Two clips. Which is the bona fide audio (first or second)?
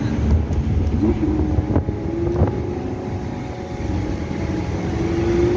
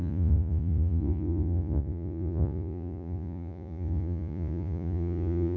first